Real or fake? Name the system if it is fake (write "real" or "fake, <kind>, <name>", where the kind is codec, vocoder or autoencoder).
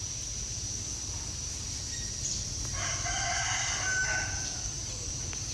real